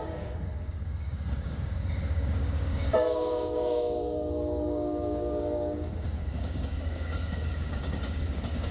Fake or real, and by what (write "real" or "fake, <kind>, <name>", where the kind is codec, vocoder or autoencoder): fake, codec, DAC